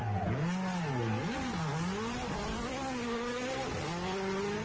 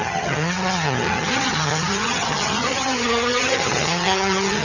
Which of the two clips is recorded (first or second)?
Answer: first